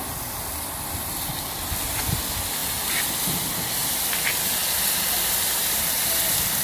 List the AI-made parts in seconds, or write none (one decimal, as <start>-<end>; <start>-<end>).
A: none